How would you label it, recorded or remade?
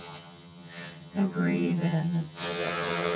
remade